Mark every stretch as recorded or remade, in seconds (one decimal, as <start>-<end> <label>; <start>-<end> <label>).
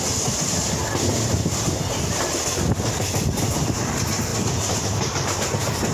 0.0-5.9 recorded